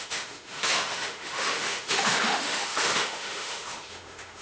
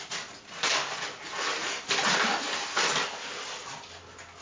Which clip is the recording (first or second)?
second